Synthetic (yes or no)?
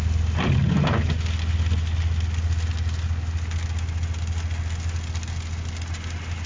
no